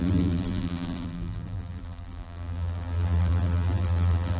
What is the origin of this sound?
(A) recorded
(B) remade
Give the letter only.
B